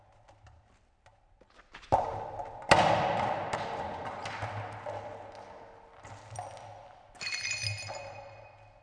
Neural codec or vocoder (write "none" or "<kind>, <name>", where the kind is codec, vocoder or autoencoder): none